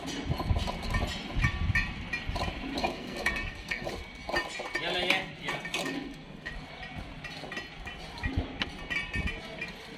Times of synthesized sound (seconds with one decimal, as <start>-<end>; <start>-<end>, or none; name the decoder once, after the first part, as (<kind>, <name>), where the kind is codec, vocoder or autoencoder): 2.8-3.9 (codec, SNAC); 5.8-6.5